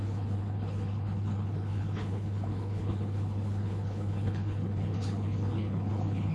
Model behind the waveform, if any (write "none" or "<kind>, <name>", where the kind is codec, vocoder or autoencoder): codec, HILCodec